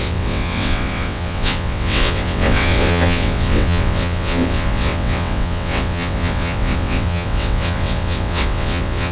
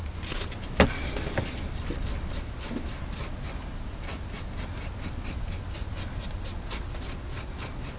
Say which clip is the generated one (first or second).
first